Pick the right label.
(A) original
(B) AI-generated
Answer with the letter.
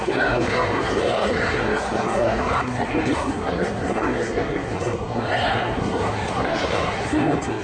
B